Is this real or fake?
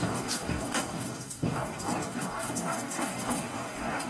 fake